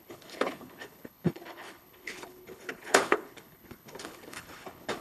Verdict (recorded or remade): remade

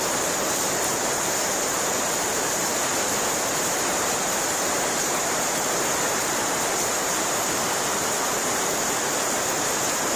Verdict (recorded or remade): remade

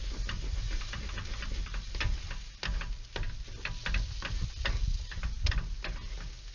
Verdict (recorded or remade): recorded